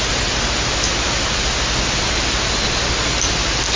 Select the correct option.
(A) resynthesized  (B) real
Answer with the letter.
B